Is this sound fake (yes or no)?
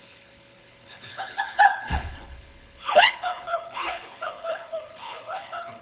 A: yes